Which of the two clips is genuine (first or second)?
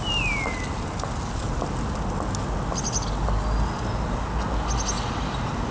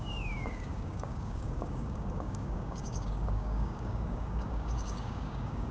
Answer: first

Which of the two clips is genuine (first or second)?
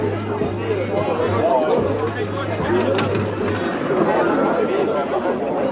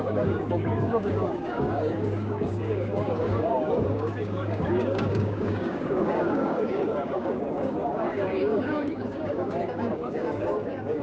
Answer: first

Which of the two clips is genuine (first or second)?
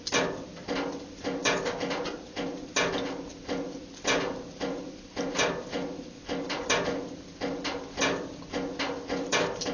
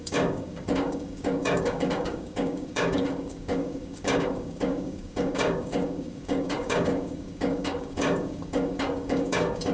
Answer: first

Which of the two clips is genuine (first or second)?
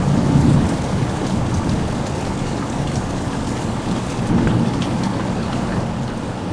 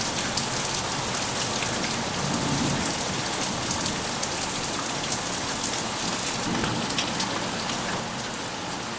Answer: second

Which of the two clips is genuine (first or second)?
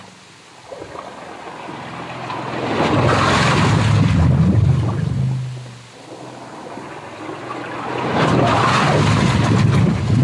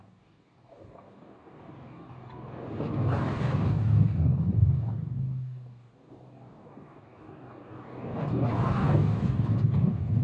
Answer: first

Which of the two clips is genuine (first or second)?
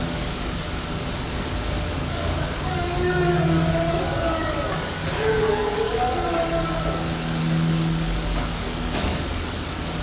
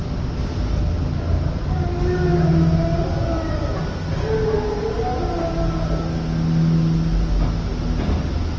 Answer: second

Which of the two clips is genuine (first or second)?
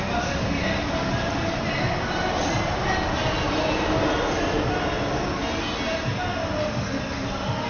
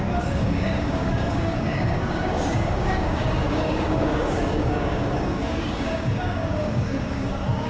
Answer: first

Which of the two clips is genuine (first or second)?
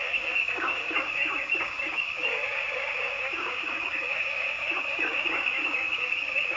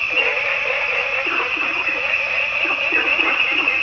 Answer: second